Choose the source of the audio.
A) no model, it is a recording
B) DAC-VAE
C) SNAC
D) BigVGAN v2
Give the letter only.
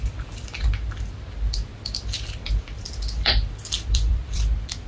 D